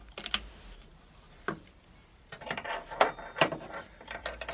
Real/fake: real